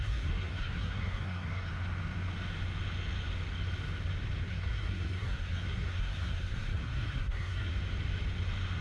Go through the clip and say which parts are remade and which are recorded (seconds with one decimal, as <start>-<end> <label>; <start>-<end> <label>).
0.0-1.7 remade; 1.7-4.5 recorded; 4.5-7.7 remade; 7.7-8.8 recorded